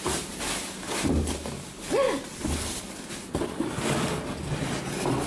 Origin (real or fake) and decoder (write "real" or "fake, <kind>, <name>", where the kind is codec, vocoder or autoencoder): fake, vocoder, BigVGAN v2